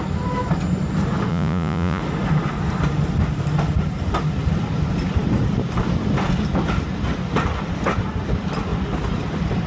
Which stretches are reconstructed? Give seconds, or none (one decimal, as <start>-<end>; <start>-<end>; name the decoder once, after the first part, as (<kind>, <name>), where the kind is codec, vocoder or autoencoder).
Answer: 1.3-2.0 (vocoder, Vocos)